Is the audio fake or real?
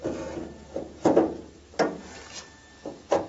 real